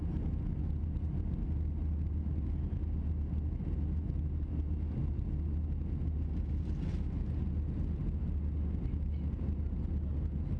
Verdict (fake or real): real